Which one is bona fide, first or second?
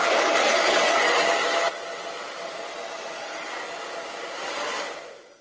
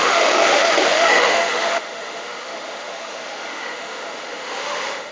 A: first